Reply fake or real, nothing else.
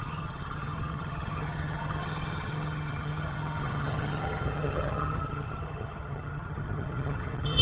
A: fake